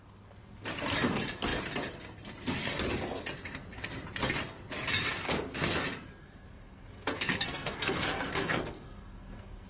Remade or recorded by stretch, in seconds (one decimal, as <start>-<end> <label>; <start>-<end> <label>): 0.0-6.2 recorded; 6.2-9.7 remade